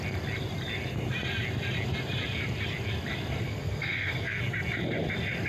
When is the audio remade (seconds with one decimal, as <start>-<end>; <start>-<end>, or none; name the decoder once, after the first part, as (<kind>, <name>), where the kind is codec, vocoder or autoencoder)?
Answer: 3.4-4.4 (codec, SNAC)